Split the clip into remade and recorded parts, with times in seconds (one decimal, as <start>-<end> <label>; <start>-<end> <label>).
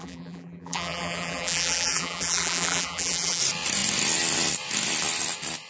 0.0-3.4 remade; 3.4-5.7 recorded